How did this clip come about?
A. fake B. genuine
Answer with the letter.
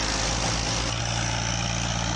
B